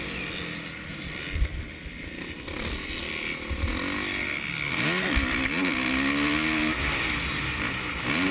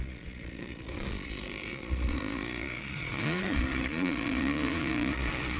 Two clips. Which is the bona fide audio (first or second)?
first